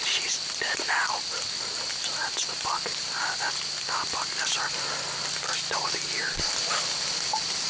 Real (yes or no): yes